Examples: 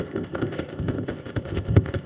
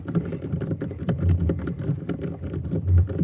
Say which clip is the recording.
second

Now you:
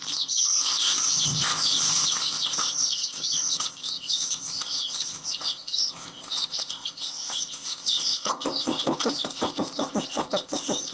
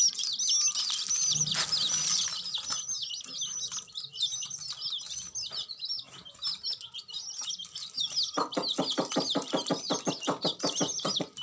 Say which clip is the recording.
second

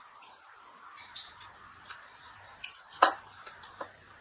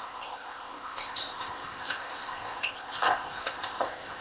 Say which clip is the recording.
first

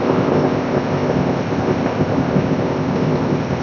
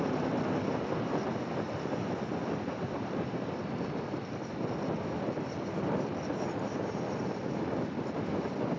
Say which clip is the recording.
second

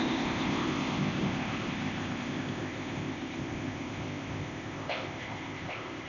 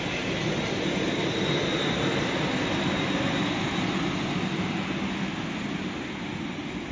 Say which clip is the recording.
second